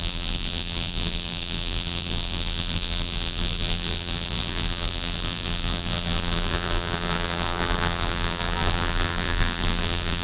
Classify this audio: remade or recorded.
remade